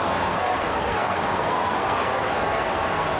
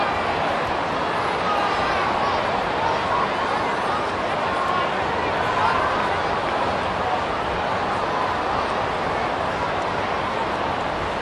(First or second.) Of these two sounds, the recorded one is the second